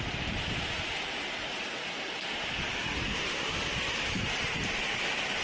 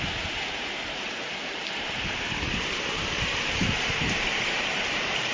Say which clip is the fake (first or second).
second